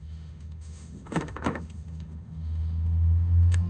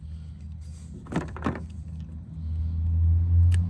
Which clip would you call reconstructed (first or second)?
first